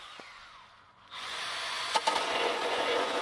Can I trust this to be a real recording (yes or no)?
no